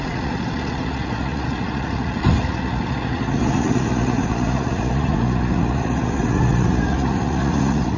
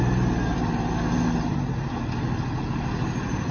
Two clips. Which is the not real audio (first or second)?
first